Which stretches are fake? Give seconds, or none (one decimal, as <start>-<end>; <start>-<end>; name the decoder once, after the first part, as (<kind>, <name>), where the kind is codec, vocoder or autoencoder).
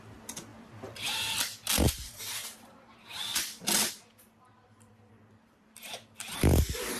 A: 0.5-3.9 (vocoder, BigVGAN v2); 4.5-7.0